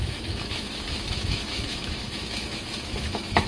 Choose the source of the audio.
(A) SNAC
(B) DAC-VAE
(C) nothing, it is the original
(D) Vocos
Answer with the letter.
B